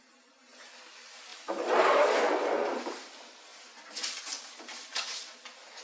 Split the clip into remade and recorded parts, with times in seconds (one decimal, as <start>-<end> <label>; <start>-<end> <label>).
0.0-5.8 recorded